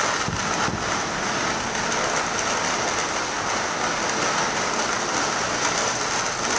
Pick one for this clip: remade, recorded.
recorded